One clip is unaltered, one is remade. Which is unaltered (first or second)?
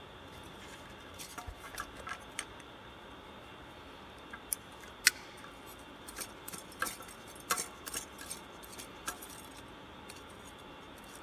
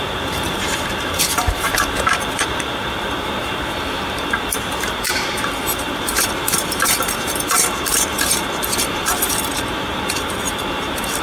first